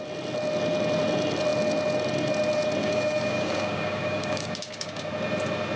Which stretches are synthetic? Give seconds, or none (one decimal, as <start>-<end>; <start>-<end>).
2.8-5.1